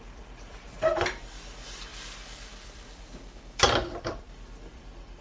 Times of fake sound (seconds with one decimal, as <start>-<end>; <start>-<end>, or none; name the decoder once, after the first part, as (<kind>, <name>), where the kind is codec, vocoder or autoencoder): 0.0-5.2 (vocoder, BigVGAN v2)